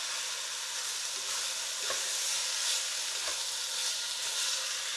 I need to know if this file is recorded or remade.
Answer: recorded